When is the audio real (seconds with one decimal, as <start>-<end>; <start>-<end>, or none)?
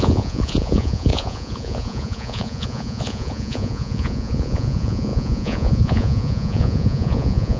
none